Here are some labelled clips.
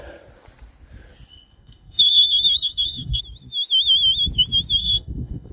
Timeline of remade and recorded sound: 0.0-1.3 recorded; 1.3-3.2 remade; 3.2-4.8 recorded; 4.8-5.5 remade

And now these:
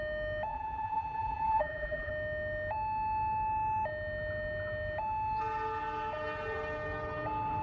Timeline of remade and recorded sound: 0.0-0.5 recorded; 0.5-2.1 remade; 2.1-7.6 recorded

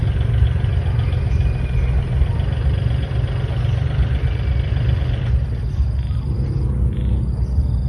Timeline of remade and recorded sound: 0.0-7.9 recorded

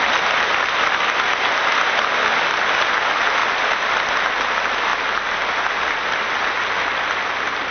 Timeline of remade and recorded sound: 0.0-7.7 recorded

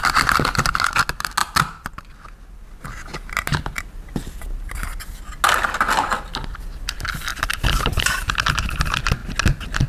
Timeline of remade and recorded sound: 0.0-9.9 recorded

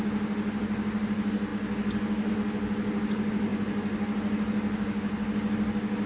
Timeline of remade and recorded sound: 0.0-6.1 recorded